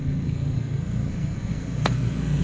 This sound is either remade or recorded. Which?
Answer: remade